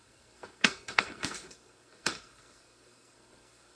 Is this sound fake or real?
fake